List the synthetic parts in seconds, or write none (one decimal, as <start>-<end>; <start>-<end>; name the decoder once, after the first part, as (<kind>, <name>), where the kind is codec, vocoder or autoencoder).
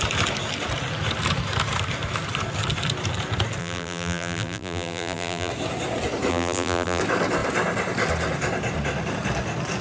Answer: 3.6-5.5 (vocoder, BigVGAN v2); 6.3-7.0